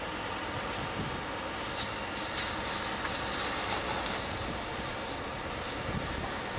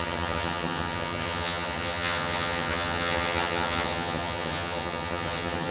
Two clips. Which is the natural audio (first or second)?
first